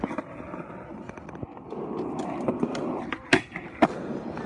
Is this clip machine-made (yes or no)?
no